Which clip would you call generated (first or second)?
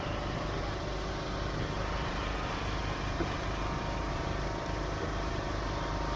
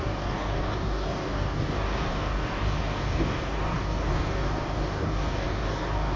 second